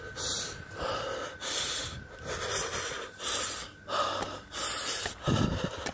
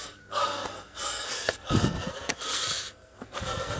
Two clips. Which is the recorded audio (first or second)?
first